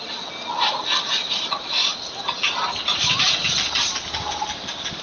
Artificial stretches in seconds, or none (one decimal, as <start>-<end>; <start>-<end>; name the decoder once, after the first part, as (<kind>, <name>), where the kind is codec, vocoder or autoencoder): none